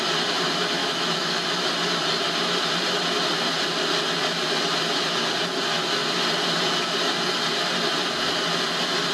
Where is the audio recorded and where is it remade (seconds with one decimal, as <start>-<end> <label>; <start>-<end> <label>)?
0.0-0.8 recorded; 0.8-1.4 remade; 1.4-9.1 recorded